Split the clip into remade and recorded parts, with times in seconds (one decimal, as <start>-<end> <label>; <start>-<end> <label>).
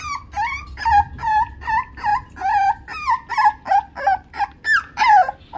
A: 0.0-5.6 recorded